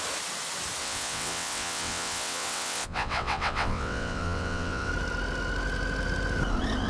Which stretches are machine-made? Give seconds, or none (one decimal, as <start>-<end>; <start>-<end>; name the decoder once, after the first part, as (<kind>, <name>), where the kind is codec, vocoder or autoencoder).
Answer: 0.8-4.9 (vocoder, WaveNeXt)